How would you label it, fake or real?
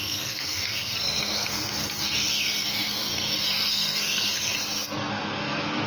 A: fake